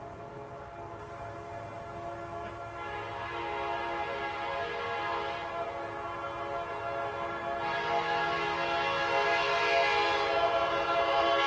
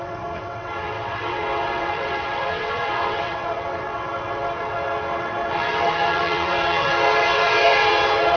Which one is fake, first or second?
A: second